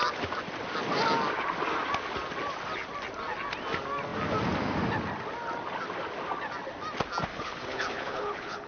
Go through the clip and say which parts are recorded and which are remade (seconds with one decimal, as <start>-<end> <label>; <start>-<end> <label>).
0.0-7.3 recorded; 7.3-8.7 remade